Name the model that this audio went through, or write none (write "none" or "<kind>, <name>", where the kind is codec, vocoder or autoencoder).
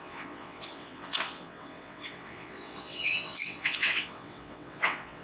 vocoder, WaveNeXt